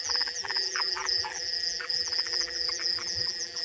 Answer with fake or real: fake